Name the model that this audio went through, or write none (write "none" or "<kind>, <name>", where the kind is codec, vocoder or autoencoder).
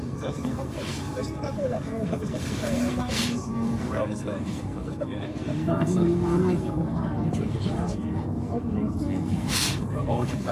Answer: codec, SNAC